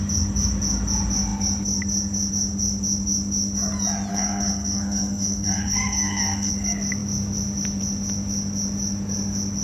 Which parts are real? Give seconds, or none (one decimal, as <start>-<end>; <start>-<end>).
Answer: 0.0-4.1; 6.5-9.6